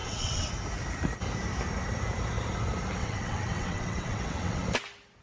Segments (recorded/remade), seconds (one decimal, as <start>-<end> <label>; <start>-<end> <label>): 0.0-0.5 remade; 0.5-3.0 recorded; 3.0-4.6 remade; 4.6-5.2 recorded